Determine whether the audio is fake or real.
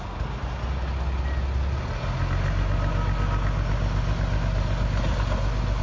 real